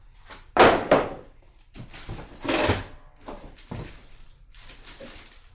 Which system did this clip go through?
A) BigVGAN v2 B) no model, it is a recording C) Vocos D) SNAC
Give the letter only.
A